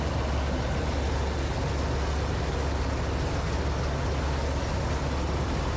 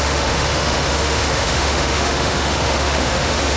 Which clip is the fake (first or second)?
second